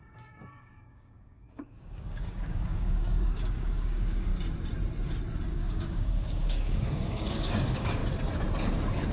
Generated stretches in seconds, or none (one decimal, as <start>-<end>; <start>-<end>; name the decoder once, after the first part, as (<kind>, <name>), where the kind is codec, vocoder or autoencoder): 0.0-4.3 (codec, DAC); 5.5-8.0